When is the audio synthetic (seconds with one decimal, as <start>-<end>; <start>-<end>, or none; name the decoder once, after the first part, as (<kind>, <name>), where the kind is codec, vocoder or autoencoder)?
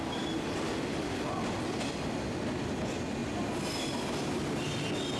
none